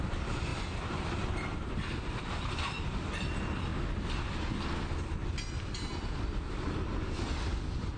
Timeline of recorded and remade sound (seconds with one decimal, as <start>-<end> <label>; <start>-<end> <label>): 0.0-3.7 remade; 3.7-6.0 recorded; 6.0-8.0 remade